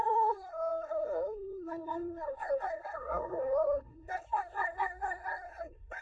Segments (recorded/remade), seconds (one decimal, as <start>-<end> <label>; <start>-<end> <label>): 0.0-6.0 remade